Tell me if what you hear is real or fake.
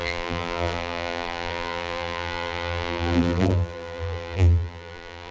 fake